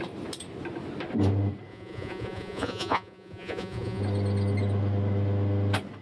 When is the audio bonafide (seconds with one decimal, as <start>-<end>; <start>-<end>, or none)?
0.0-1.7; 4.0-6.0